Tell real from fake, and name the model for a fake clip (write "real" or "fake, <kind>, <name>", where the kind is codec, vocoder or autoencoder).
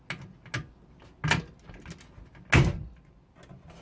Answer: real